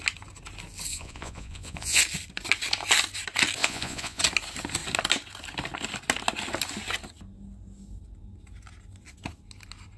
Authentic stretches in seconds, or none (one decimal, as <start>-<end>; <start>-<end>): 0.0-0.9; 2.0-3.6; 4.2-10.0